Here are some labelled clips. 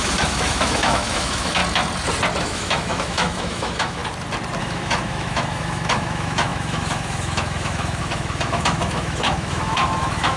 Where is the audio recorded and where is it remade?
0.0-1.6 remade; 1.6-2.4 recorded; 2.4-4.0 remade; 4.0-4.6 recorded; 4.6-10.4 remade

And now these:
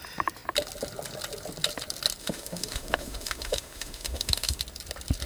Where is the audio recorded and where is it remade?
0.0-2.2 recorded; 2.2-4.6 remade; 4.6-5.3 recorded

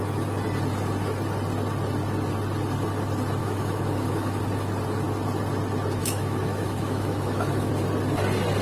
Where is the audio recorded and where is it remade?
0.0-3.4 recorded; 3.4-4.4 remade; 4.4-6.0 recorded; 6.0-7.7 remade; 7.7-8.6 recorded

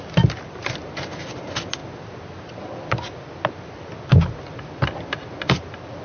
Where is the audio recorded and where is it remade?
0.0-6.0 recorded

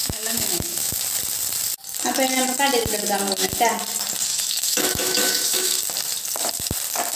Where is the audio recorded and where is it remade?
0.0-1.0 remade; 1.0-4.3 recorded; 4.3-5.8 remade; 5.8-7.2 recorded

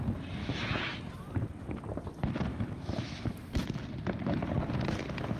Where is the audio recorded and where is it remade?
0.0-0.4 recorded; 0.4-1.0 remade; 1.0-2.5 recorded; 2.5-3.5 remade; 3.5-5.4 recorded